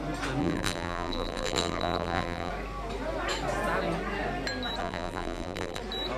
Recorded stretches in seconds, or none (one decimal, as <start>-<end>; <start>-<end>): 0.0-0.4; 2.5-4.8; 5.8-6.2